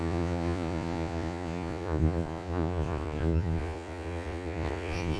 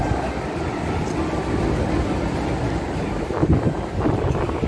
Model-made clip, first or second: first